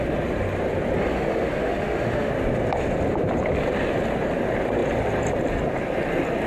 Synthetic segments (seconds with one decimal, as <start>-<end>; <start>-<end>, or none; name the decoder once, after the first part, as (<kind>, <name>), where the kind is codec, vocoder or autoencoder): 1.0-2.3 (autoencoder, DAC-VAE)